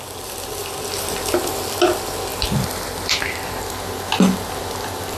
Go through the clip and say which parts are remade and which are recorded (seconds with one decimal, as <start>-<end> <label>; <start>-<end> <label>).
0.0-5.2 recorded